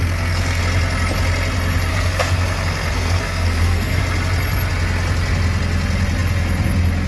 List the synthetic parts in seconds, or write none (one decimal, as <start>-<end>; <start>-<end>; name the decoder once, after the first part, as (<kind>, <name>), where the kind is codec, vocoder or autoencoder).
0.0-0.6 (codec, SNAC); 1.9-4.0